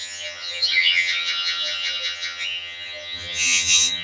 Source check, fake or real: fake